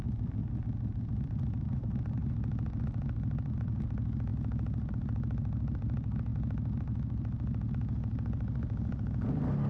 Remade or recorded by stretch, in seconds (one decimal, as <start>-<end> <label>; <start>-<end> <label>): 0.0-0.4 remade; 0.4-1.0 recorded; 1.0-2.2 remade; 2.2-2.8 recorded; 2.8-4.3 remade; 4.3-4.9 recorded; 4.9-6.3 remade; 6.3-7.7 recorded; 7.7-9.7 remade